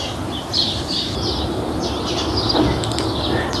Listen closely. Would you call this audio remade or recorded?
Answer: recorded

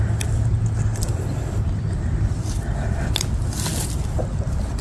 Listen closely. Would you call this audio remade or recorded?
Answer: recorded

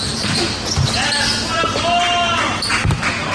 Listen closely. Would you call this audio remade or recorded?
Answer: recorded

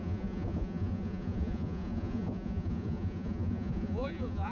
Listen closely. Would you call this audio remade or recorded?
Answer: remade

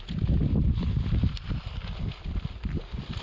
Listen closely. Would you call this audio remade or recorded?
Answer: recorded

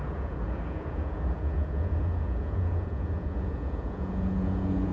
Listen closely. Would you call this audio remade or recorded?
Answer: remade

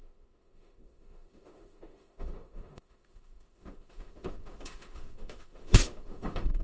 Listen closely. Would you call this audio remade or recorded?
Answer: remade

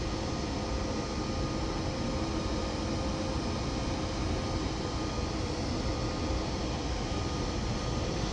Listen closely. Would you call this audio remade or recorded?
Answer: recorded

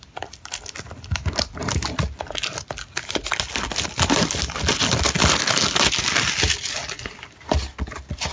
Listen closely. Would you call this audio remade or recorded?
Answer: recorded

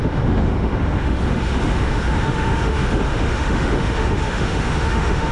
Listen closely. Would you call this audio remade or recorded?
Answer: remade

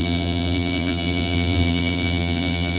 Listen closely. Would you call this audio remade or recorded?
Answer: remade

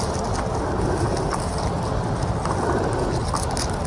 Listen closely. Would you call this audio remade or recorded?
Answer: recorded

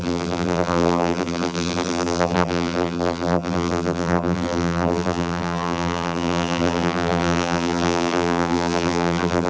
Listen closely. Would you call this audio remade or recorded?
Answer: remade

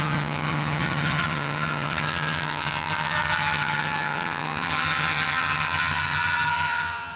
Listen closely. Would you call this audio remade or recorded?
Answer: remade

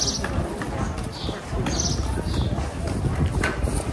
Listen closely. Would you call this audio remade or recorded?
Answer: recorded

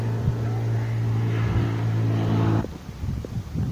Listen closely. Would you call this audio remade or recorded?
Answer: recorded